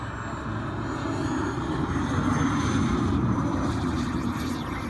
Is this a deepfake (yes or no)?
no